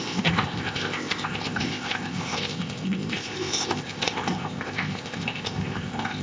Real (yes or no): no